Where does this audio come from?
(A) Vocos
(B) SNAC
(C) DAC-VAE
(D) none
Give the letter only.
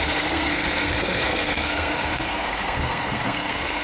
B